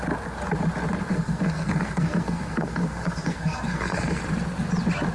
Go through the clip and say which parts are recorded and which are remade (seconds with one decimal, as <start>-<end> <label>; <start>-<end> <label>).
0.0-1.1 recorded; 1.1-4.2 remade; 4.2-5.1 recorded